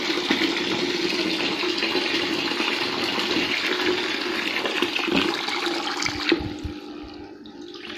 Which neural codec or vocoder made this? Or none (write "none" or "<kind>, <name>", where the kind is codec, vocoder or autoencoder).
none